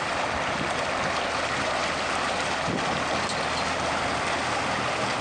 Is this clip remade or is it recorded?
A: recorded